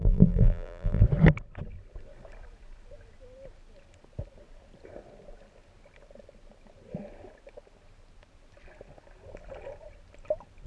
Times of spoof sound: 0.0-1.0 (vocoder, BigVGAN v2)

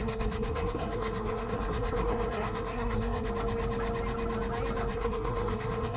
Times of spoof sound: 0.0-3.3 (codec, SNAC); 4.9-6.0

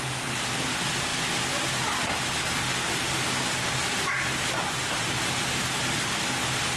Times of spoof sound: none

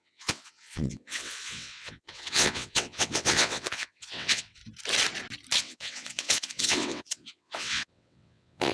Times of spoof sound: 0.0-4.6 (vocoder, WaveNeXt); 5.6-8.7